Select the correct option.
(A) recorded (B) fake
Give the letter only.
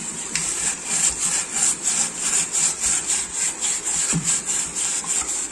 B